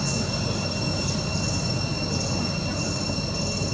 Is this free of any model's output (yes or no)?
yes